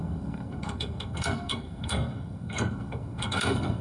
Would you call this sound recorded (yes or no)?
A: no